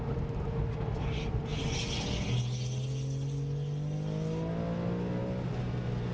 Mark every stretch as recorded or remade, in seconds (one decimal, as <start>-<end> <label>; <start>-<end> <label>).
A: 0.0-6.1 recorded